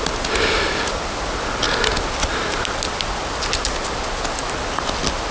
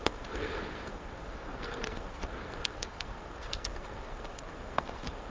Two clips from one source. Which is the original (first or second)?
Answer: first